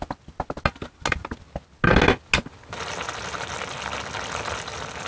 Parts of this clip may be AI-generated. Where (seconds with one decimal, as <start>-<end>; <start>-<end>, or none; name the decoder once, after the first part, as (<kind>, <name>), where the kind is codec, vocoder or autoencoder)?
none